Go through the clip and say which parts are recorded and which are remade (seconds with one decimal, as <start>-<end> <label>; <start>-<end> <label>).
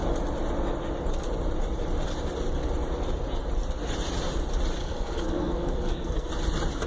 0.0-4.8 recorded; 4.8-6.3 remade; 6.3-6.9 recorded